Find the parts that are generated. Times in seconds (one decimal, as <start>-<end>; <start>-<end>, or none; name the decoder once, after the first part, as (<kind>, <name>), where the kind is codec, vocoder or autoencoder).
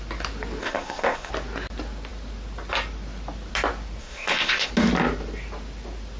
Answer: 0.6-1.3 (codec, ZipCodec); 4.0-4.7